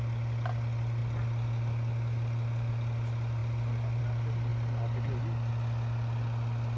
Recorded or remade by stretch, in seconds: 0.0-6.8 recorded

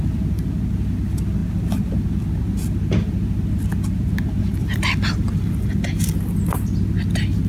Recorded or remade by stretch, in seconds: 0.0-7.5 recorded

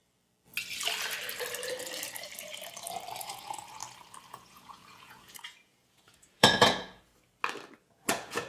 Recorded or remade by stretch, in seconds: 0.0-3.2 recorded; 3.2-3.8 remade; 3.8-4.3 recorded; 4.3-7.1 remade; 7.1-7.8 recorded; 7.8-8.5 remade

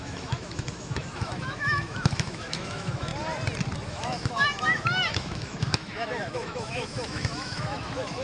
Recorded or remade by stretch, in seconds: 0.0-3.1 remade; 3.1-3.8 recorded; 3.8-8.2 remade

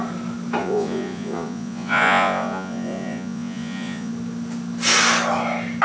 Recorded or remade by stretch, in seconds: 0.0-0.6 recorded; 0.6-4.1 remade; 4.1-5.8 recorded